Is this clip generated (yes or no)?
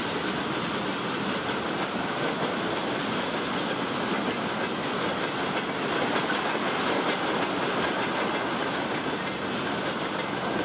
no